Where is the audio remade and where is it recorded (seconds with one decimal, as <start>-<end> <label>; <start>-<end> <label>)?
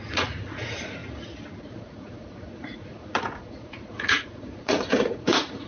0.0-1.0 remade; 1.0-1.6 recorded; 1.6-5.7 remade